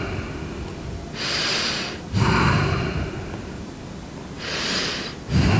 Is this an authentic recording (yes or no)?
yes